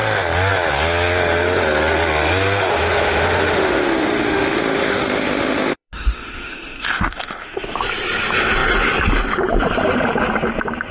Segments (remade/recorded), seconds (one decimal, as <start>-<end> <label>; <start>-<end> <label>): 0.0-2.7 recorded; 2.7-7.8 remade; 7.8-10.9 recorded

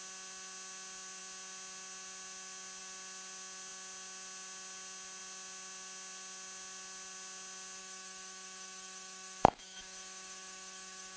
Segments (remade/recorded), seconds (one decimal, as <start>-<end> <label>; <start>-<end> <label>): 0.0-7.8 recorded; 7.8-11.2 remade

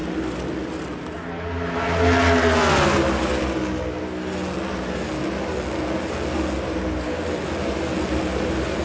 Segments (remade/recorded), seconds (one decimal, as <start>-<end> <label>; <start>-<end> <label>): 0.0-8.8 recorded

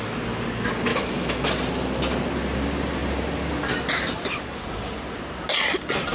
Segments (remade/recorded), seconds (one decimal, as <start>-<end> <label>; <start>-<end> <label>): 0.0-0.9 recorded; 0.9-1.5 remade; 1.5-6.1 recorded

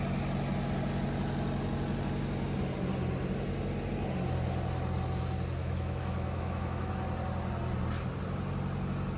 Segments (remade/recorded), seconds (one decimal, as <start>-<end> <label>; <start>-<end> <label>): 0.0-5.6 recorded; 5.6-6.9 remade; 6.9-9.2 recorded

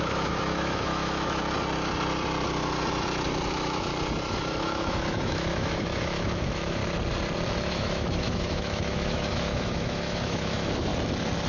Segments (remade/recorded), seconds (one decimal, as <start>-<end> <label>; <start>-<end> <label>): 0.0-1.4 remade; 1.4-3.5 recorded; 3.5-3.9 remade; 3.9-4.6 recorded; 4.6-6.8 remade; 6.8-7.6 recorded; 7.6-10.9 remade; 10.9-11.5 recorded